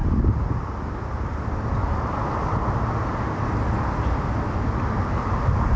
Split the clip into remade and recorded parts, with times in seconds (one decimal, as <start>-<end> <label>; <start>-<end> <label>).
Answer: 0.0-5.8 recorded